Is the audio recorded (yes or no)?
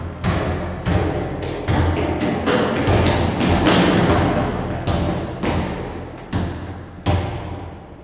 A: yes